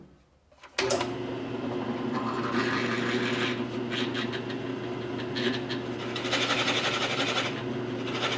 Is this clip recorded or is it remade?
recorded